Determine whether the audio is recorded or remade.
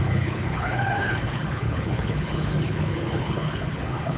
remade